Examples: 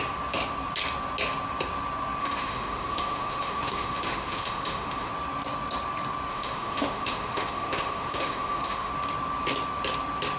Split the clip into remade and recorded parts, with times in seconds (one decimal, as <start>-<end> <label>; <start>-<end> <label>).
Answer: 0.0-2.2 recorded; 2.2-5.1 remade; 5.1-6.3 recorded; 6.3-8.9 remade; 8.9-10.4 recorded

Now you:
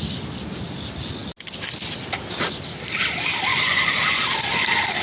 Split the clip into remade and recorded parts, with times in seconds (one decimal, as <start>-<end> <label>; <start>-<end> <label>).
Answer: 0.0-3.5 recorded; 3.5-4.2 remade; 4.2-5.0 recorded

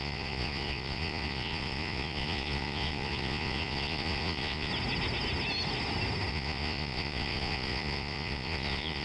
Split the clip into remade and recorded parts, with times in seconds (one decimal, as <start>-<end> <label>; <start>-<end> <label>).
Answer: 0.0-4.7 remade; 4.7-6.3 recorded; 6.3-9.0 remade

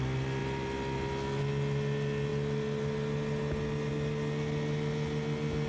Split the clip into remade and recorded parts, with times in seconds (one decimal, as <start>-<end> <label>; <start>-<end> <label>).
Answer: 0.0-5.7 recorded

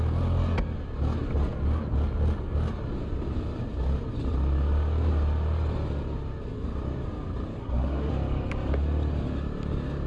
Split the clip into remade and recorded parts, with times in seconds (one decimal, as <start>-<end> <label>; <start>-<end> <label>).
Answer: 0.0-7.6 recorded; 7.6-8.1 remade; 8.1-10.1 recorded

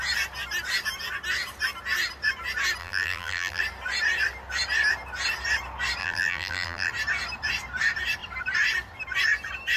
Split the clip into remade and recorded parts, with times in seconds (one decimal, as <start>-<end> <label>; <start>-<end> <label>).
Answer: 0.0-2.8 recorded; 2.8-3.6 remade; 3.6-6.0 recorded; 6.0-6.9 remade; 6.9-9.8 recorded

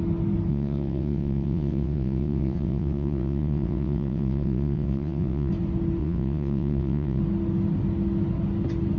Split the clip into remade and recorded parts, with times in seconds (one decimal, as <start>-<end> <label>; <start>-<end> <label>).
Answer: 0.0-0.5 recorded; 0.5-5.5 remade; 5.5-6.0 recorded; 6.0-7.2 remade; 7.2-9.0 recorded

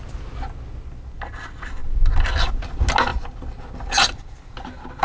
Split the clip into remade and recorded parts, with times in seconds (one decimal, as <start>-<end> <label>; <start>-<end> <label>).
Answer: 0.0-5.0 recorded